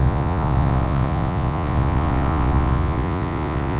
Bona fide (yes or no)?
no